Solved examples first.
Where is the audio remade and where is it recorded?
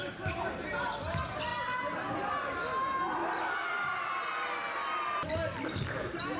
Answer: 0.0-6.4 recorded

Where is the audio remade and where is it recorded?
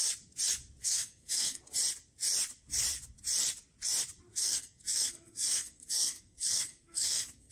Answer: 0.0-0.8 recorded; 0.8-1.6 remade; 1.6-4.3 recorded; 4.3-7.5 remade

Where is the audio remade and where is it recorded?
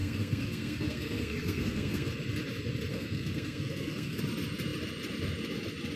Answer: 0.0-2.1 remade; 2.1-2.9 recorded; 2.9-4.2 remade; 4.2-6.0 recorded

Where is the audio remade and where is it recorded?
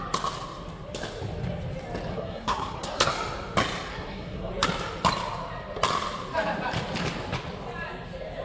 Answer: 0.0-2.1 recorded; 2.1-3.1 remade; 3.1-3.9 recorded; 3.9-4.5 remade; 4.5-8.4 recorded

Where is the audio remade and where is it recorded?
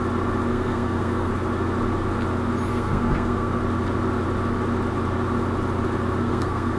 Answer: 0.0-0.5 recorded; 0.5-1.3 remade; 1.3-2.7 recorded; 2.7-3.6 remade; 3.6-6.2 recorded; 6.2-6.8 remade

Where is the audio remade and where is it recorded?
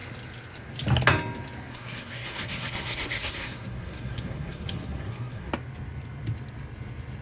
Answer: 0.0-1.7 recorded; 1.7-5.5 remade; 5.5-7.2 recorded